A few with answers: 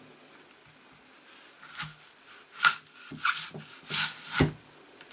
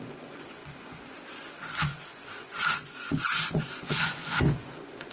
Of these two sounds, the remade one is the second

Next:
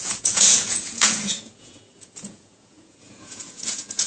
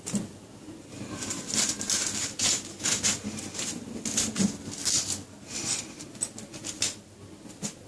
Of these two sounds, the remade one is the first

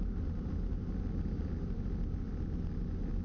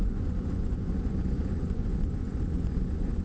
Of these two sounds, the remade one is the second